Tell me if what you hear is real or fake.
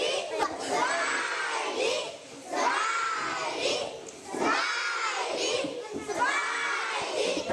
real